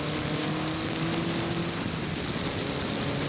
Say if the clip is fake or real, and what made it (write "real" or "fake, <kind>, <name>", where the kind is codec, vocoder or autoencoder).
real